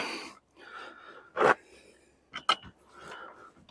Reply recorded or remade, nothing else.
recorded